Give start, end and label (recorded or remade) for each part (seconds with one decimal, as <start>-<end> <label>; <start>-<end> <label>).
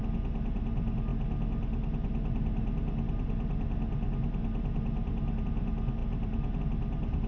0.0-7.3 recorded